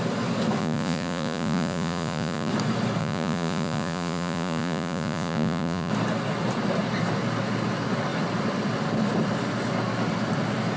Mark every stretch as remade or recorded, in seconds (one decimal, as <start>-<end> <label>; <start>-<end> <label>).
0.0-0.6 recorded; 0.6-2.5 remade; 2.5-3.0 recorded; 3.0-5.9 remade; 5.9-10.8 recorded